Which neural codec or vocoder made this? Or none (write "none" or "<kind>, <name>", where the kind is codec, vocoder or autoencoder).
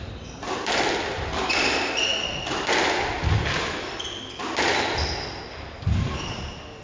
none